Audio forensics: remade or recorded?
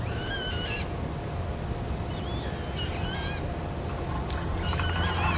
recorded